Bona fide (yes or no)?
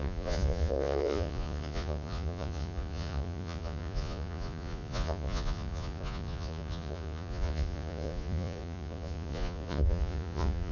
no